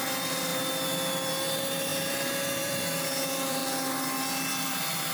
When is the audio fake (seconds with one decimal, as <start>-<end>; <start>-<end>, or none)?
0.0-0.5; 1.3-3.6; 4.5-5.1